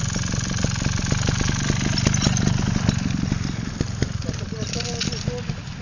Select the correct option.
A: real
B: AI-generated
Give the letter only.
A